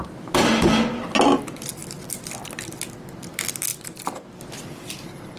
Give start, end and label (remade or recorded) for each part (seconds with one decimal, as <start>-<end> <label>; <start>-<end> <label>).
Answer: 0.0-5.4 recorded